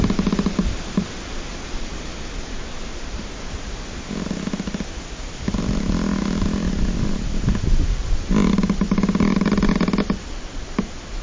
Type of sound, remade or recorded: recorded